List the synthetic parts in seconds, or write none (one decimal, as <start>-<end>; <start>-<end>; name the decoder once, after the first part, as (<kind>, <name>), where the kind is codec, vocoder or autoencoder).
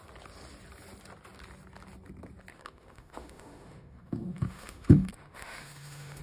2.5-6.2 (autoencoder, DAC-VAE)